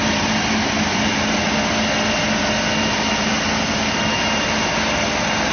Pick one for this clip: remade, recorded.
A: recorded